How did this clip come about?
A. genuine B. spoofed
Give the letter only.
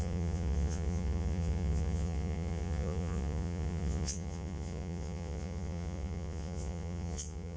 B